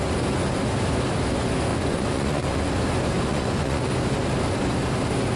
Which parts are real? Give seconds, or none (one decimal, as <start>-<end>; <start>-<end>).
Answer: 0.0-1.7; 2.7-3.3; 3.9-5.4